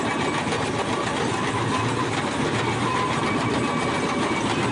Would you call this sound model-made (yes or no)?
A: no